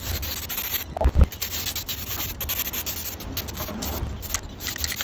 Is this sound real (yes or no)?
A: yes